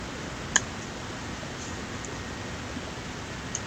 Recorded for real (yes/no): yes